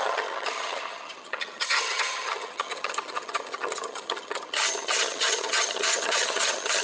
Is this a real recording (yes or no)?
no